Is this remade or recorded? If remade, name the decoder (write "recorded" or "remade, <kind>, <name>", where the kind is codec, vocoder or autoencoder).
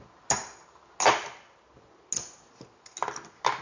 recorded